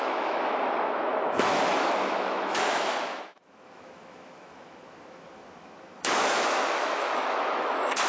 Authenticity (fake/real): fake